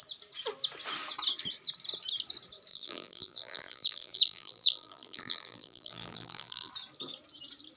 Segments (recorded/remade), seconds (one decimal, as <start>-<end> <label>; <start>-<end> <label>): 0.0-2.7 recorded; 2.7-6.7 remade; 6.7-7.8 recorded